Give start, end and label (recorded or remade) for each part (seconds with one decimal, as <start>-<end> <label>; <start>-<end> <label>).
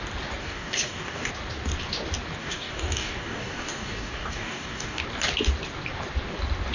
0.0-0.4 recorded; 0.4-1.3 remade; 1.3-2.4 recorded; 2.4-5.0 remade; 5.0-6.7 recorded